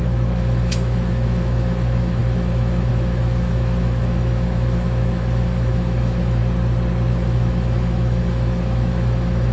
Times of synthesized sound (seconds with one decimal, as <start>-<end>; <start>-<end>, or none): 0.0-6.4; 7.1-9.5